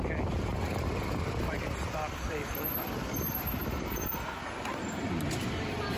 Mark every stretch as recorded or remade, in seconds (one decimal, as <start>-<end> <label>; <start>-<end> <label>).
0.0-0.5 recorded; 0.5-4.1 remade; 4.1-6.0 recorded